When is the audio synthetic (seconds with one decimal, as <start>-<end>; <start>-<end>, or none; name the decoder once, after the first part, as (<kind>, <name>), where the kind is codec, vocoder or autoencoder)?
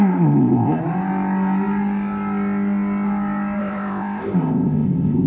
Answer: 0.0-0.8 (codec, ZipCodec); 3.6-5.3